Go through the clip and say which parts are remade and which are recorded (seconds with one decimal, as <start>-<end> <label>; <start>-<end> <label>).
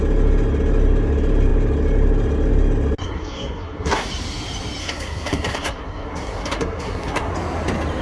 0.0-3.0 recorded; 3.0-4.1 remade; 4.1-4.8 recorded; 4.8-7.3 remade; 7.3-8.0 recorded